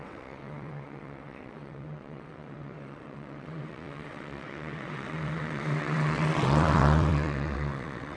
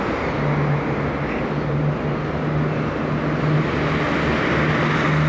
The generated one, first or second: first